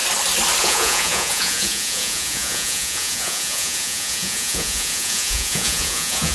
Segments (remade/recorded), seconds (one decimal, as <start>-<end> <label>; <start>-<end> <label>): 0.0-0.6 recorded; 0.6-6.3 remade